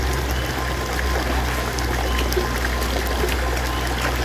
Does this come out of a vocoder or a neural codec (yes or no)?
no